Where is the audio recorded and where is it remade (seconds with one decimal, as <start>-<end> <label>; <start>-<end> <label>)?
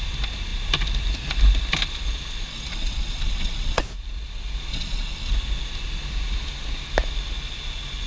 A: 0.0-2.5 recorded; 2.5-3.8 remade; 3.8-4.7 recorded; 4.7-5.3 remade; 5.3-8.1 recorded